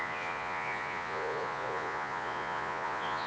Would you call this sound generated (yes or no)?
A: yes